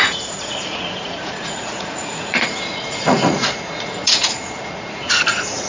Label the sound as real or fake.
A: fake